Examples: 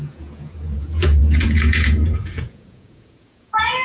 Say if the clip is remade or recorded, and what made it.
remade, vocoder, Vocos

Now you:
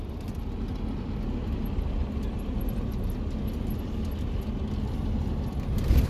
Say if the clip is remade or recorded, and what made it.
recorded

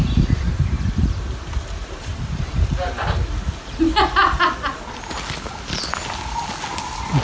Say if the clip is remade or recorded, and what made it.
recorded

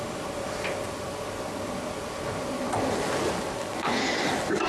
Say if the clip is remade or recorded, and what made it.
recorded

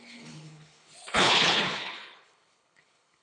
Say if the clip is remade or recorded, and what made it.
remade, codec, HILCodec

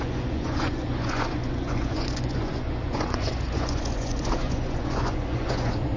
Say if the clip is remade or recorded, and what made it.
remade, vocoder, Vocos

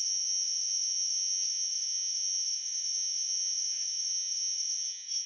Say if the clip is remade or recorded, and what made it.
remade, vocoder, Vocos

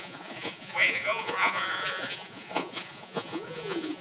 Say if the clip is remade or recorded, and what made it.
remade, vocoder, Vocos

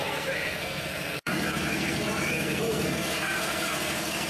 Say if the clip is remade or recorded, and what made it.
remade, codec, SNAC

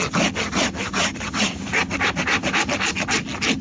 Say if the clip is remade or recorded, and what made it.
recorded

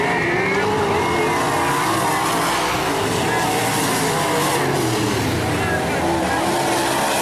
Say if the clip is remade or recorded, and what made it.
recorded